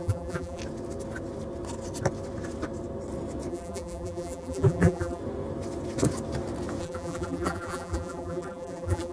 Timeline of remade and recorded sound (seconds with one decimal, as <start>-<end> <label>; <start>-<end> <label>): 0.0-0.6 remade; 0.6-3.5 recorded; 3.5-5.2 remade; 5.2-6.8 recorded; 6.8-9.1 remade